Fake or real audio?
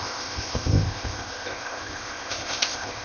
fake